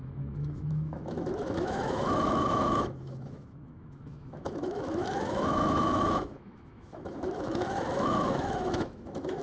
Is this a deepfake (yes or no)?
yes